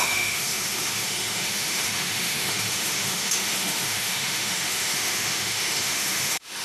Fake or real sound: fake